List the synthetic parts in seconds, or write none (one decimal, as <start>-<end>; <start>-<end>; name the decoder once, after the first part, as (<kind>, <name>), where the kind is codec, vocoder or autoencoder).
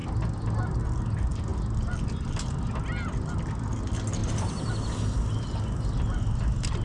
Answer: none